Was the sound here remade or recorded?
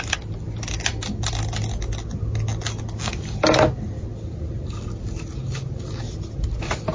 recorded